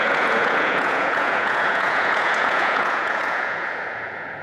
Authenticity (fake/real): fake